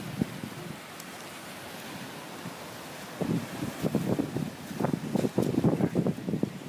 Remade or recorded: recorded